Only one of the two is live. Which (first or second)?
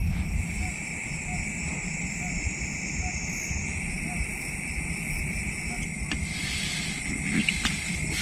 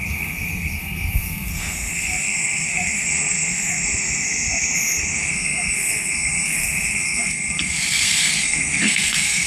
first